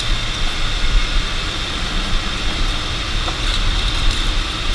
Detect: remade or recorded recorded